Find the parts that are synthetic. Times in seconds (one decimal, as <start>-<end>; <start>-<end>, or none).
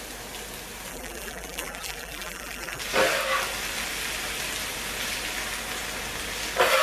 0.9-2.8